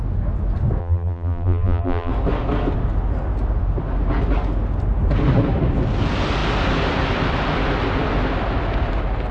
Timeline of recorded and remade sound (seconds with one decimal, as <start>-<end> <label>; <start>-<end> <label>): 0.0-0.8 recorded; 0.8-2.1 remade; 2.1-9.3 recorded